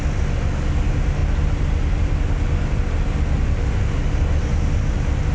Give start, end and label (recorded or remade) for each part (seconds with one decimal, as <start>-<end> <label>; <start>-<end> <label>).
0.0-5.3 recorded